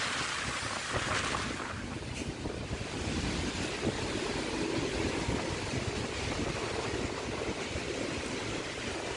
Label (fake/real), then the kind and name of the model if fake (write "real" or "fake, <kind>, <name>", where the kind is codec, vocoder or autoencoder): real